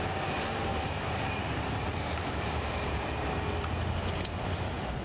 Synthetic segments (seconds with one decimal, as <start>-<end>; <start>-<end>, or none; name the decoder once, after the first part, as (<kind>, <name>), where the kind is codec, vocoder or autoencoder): 0.7-3.7 (vocoder, BigVGAN v2)